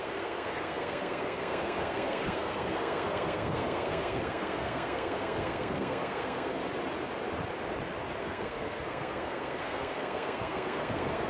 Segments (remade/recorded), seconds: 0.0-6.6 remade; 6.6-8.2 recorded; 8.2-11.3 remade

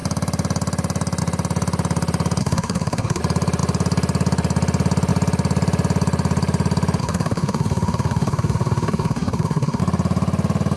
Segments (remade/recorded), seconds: 0.0-2.4 recorded; 2.4-3.2 remade; 3.2-7.0 recorded; 7.0-9.8 remade; 9.8-10.8 recorded

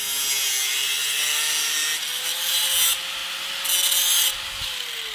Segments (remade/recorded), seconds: 0.0-5.1 recorded

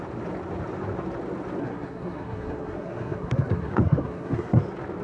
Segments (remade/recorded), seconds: 0.0-1.6 recorded; 1.6-4.6 remade; 4.6-5.0 recorded

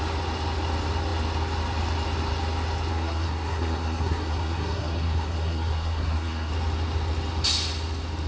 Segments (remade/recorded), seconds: 0.0-2.9 recorded; 2.9-6.5 remade; 6.5-8.3 recorded